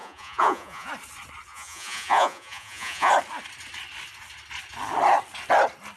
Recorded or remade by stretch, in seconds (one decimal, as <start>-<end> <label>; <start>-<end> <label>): 0.0-0.9 remade; 0.9-1.5 recorded; 1.5-3.1 remade; 3.1-6.0 recorded